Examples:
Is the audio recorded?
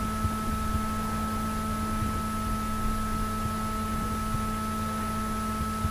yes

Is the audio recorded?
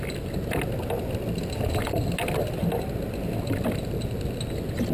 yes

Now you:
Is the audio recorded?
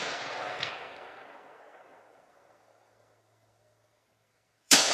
no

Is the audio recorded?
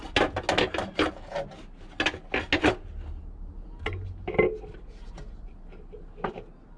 yes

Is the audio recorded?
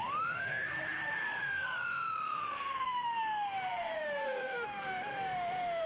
no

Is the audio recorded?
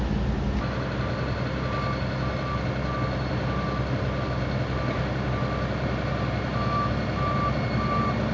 yes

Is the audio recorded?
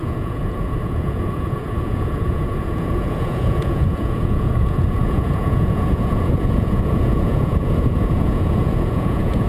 no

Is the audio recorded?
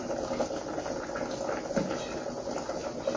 yes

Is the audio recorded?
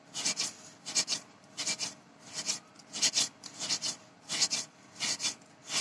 yes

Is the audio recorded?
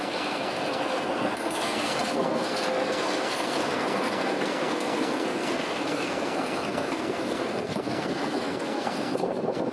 no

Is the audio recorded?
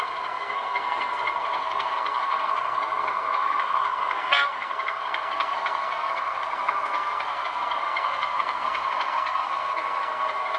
no